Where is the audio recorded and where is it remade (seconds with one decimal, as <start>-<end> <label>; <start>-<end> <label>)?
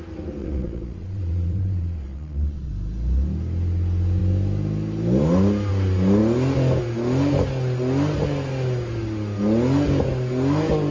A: 0.0-0.4 recorded; 0.4-2.7 remade; 2.7-10.9 recorded